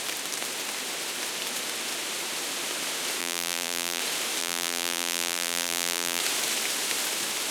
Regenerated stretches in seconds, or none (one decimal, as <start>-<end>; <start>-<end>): 3.2-4.0; 4.4-6.2